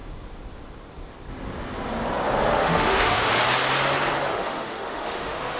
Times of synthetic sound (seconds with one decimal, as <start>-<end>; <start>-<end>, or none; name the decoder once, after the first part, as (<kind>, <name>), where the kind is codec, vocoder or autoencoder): 2.5-3.3 (autoencoder, DAC-VAE); 4.3-5.6